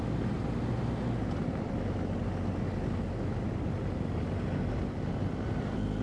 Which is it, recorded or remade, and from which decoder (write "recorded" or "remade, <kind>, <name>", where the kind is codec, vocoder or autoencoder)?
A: recorded